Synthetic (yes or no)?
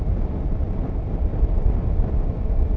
no